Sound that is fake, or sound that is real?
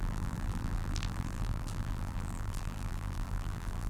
fake